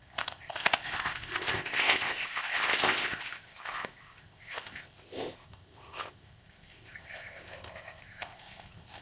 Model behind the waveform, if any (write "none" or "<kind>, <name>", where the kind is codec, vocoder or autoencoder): codec, ZipCodec